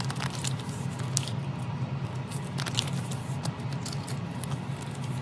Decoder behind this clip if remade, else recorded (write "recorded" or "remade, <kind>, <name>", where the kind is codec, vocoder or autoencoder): recorded